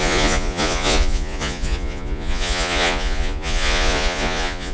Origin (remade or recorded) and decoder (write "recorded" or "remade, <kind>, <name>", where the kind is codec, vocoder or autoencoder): remade, vocoder, Vocos